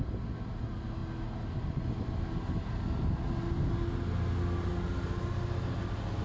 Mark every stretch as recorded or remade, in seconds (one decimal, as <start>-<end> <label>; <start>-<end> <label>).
0.0-6.2 recorded